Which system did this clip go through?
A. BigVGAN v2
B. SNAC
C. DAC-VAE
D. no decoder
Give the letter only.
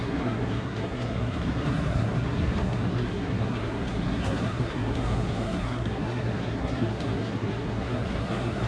B